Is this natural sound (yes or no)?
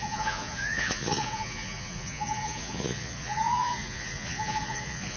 no